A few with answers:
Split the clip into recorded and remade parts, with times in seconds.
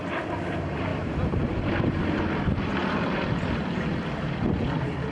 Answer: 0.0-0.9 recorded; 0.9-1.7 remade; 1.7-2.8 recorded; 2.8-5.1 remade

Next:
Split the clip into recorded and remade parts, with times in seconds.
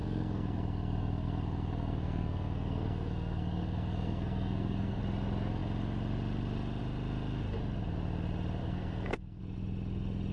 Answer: 0.0-5.0 remade; 5.0-8.6 recorded; 8.6-9.4 remade; 9.4-10.3 recorded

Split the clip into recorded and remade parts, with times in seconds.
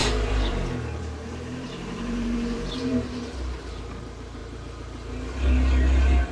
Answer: 0.0-3.8 remade; 3.8-6.3 recorded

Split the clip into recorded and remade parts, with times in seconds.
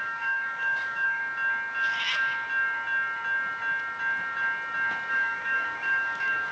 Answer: 0.0-1.2 remade; 1.2-5.1 recorded; 5.1-6.5 remade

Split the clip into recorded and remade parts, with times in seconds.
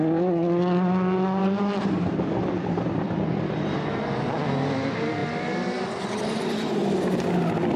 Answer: 0.0-1.4 recorded; 1.4-4.2 remade; 4.2-7.8 recorded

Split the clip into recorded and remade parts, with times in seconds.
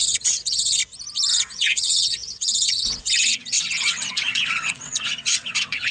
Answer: 0.0-0.8 remade; 0.8-1.3 recorded; 1.3-5.9 remade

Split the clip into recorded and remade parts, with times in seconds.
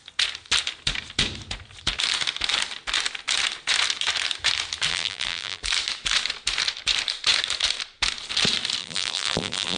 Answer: 0.0-4.9 recorded; 4.9-5.6 remade; 5.6-8.8 recorded; 8.8-9.8 remade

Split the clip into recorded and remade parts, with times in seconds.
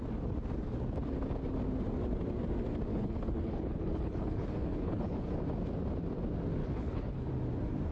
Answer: 0.0-2.9 recorded; 2.9-5.3 remade; 5.3-6.6 recorded; 6.6-7.3 remade; 7.3-7.9 recorded